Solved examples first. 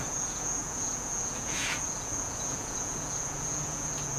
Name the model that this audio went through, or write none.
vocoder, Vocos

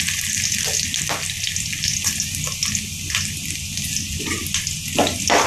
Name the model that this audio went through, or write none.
none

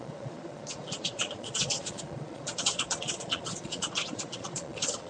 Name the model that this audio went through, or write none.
vocoder, Vocos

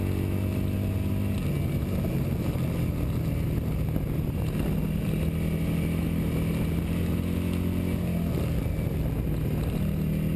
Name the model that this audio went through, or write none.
none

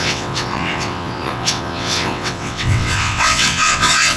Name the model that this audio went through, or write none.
vocoder, WaveNeXt